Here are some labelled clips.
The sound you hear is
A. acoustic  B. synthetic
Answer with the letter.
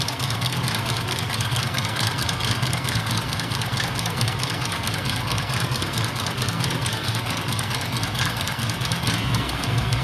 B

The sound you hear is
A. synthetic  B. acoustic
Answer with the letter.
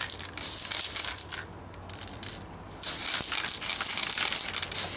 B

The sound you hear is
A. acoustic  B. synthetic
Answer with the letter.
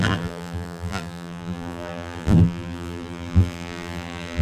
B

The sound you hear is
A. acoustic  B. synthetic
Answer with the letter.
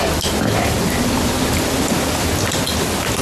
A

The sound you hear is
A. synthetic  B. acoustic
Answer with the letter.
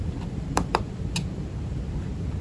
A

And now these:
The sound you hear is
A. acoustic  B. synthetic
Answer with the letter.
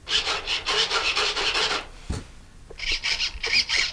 A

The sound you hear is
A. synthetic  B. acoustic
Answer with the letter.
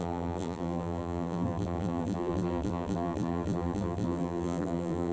A